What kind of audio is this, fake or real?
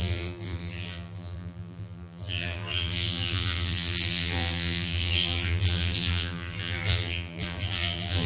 fake